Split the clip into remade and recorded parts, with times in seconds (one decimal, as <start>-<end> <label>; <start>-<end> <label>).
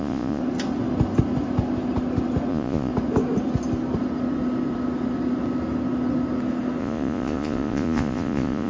0.0-0.4 remade; 0.4-2.5 recorded; 2.5-2.9 remade; 2.9-6.8 recorded; 6.8-8.7 remade